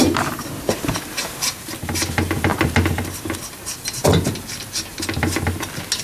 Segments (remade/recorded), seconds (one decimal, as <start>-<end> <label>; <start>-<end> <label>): 0.0-6.0 recorded